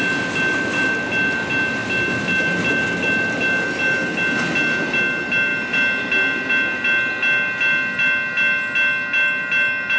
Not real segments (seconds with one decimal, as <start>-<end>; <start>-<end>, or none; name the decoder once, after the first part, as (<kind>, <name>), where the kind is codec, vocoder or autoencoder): none